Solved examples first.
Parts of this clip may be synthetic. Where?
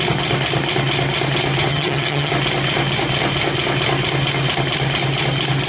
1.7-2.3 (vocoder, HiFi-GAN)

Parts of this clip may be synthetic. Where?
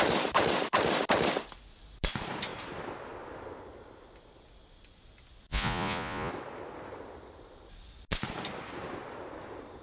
5.5-6.3 (vocoder, Vocos)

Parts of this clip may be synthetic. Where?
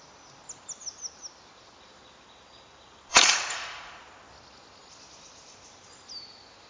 3.1-4.0 (vocoder, Vocos)